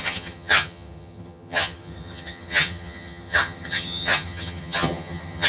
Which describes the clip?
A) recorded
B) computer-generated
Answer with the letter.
B